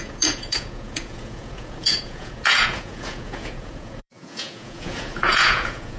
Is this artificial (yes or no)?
yes